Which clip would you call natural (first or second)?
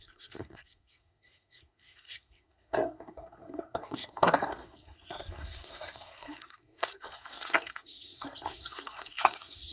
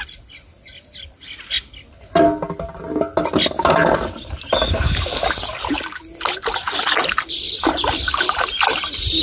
second